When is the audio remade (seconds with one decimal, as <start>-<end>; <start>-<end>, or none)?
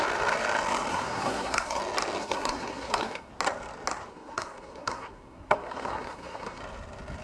0.9-1.8; 2.2-3.3; 4.1-6.6